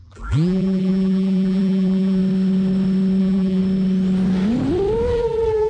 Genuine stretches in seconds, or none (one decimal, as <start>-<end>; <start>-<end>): 2.2-3.2; 3.6-5.1

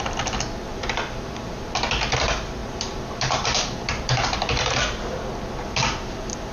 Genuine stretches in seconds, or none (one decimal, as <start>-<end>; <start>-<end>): 0.0-0.7; 1.7-2.6; 4.8-6.5